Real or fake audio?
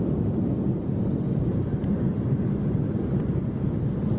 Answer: real